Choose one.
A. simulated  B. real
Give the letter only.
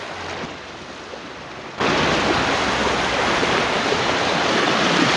B